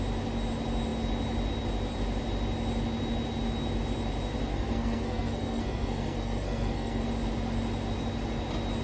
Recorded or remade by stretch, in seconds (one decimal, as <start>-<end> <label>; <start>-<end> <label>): 0.0-4.5 recorded; 4.5-7.1 remade; 7.1-8.8 recorded